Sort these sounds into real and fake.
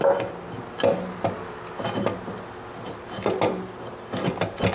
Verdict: real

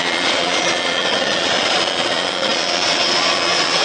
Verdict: fake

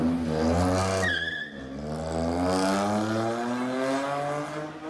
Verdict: real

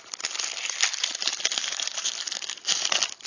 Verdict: real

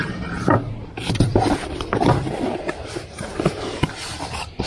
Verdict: fake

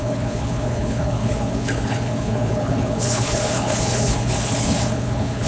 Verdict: fake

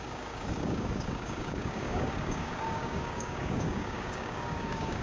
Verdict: fake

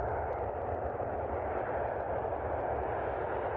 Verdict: real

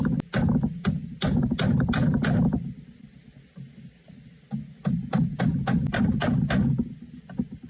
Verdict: real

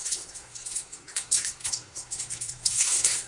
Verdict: fake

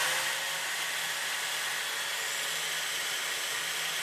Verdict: real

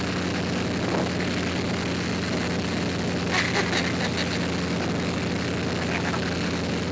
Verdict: real